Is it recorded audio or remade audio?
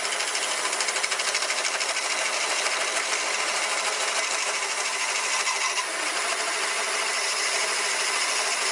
recorded